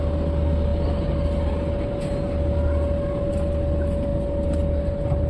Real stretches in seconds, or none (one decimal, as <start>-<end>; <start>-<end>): 0.0-5.3